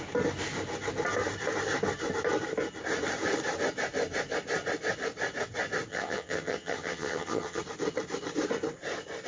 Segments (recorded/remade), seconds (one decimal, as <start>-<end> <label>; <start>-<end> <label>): 0.0-5.9 recorded; 5.9-7.6 remade; 7.6-9.3 recorded